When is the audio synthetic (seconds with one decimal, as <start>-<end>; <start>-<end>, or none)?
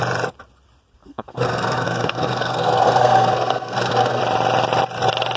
1.0-4.2